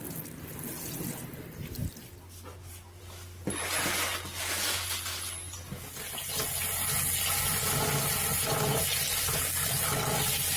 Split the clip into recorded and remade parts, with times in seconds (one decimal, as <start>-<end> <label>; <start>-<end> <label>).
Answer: 0.0-10.6 recorded